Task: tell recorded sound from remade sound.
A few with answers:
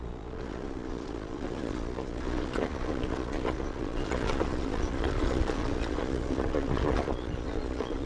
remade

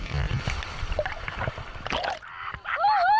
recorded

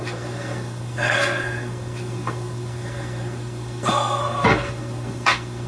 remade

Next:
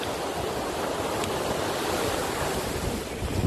remade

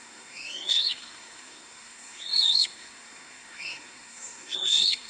remade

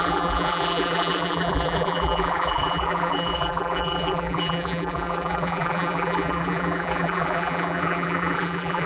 remade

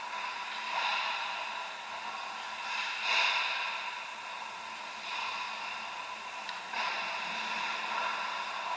recorded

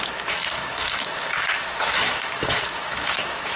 remade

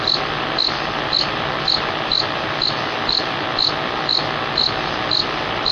recorded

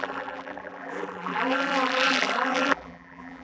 remade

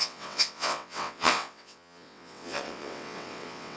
remade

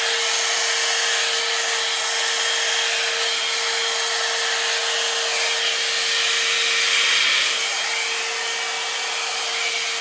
recorded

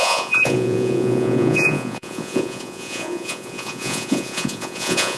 remade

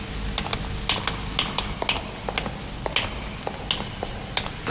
recorded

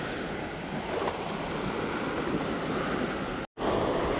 recorded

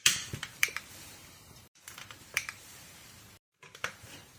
remade